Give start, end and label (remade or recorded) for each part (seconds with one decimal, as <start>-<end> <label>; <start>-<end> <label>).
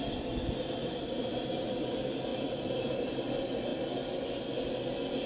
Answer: 0.0-0.8 recorded; 0.8-1.8 remade; 1.8-2.3 recorded; 2.3-3.2 remade; 3.2-5.3 recorded